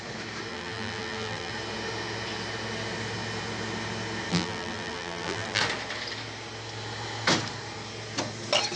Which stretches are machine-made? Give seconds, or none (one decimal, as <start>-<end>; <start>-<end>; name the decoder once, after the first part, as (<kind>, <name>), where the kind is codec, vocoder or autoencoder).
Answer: 0.5-1.5 (vocoder, BigVGAN v2); 4.3-5.6